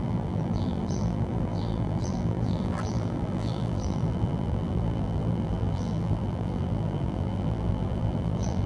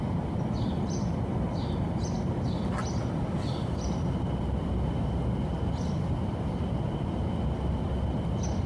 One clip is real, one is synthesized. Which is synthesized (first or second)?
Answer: first